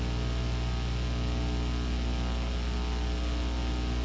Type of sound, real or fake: real